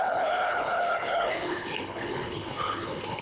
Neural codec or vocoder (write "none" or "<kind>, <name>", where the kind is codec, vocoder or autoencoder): codec, HILCodec